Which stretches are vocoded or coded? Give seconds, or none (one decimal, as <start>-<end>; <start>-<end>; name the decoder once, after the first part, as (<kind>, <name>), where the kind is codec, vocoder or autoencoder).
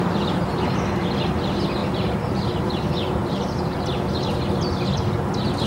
1.8-2.4 (vocoder, BigVGAN v2)